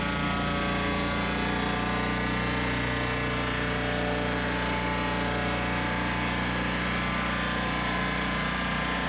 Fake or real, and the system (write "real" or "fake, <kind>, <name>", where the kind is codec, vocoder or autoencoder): real